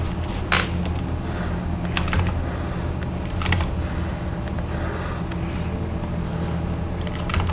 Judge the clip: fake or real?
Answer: real